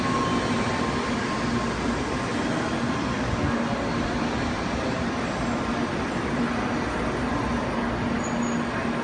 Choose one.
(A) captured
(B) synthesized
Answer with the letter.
A